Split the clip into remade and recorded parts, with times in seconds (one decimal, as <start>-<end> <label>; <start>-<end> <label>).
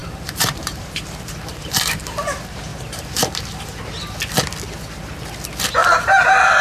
0.0-2.0 remade; 2.0-2.7 recorded; 2.7-3.8 remade; 3.8-5.8 recorded; 5.8-6.6 remade